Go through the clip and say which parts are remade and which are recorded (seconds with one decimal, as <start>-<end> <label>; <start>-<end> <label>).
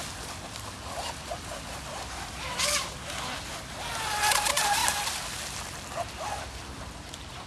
0.0-7.5 recorded